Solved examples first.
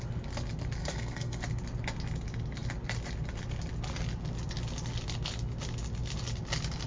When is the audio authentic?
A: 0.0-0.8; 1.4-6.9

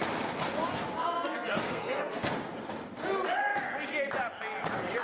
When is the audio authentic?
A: 0.0-1.0; 2.3-5.0

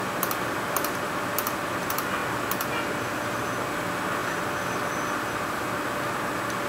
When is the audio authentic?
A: 0.0-6.7